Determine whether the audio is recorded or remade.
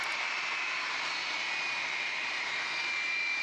remade